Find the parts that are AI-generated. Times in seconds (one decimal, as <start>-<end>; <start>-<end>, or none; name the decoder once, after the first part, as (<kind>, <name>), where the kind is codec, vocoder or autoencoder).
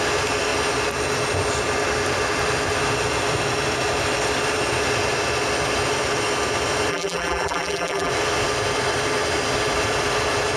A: 6.9-8.1 (vocoder, BigVGAN v2)